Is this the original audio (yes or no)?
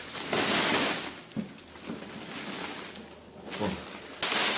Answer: yes